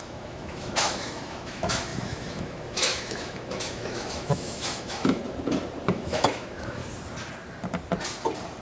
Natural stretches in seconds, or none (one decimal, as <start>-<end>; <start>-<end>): 5.2-5.9; 6.8-8.6